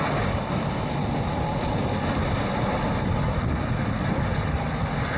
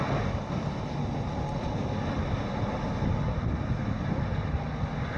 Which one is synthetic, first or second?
first